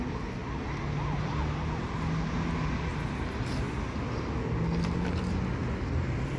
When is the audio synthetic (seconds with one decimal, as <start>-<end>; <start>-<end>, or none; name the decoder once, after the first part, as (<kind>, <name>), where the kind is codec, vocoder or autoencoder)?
none